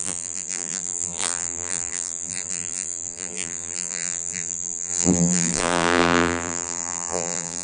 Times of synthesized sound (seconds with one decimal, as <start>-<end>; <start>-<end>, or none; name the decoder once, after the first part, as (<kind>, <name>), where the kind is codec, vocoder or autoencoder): 0.0-7.6 (vocoder, BigVGAN v2)